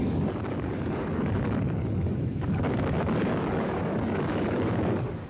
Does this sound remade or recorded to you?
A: remade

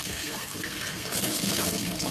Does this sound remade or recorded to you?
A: remade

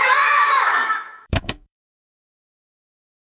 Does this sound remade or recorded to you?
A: remade